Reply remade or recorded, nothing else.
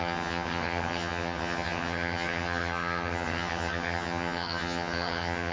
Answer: remade